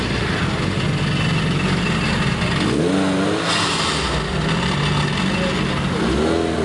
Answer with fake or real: real